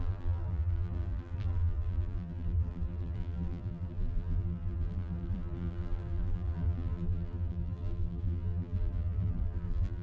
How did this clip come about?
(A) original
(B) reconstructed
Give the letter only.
B